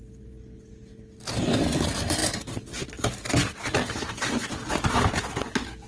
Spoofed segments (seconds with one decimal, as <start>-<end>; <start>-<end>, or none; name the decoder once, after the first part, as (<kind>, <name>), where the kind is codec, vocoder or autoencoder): none